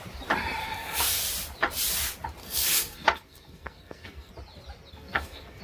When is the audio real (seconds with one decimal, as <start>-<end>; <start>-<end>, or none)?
0.0-0.6; 1.2-2.4; 4.3-4.9